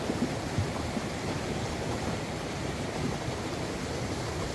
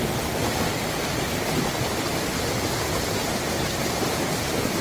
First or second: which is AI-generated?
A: first